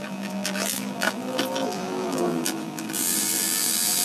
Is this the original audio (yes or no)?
no